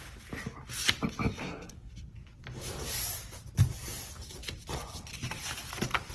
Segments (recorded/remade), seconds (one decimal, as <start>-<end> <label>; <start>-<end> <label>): 0.0-1.3 recorded; 1.3-1.9 remade; 1.9-6.1 recorded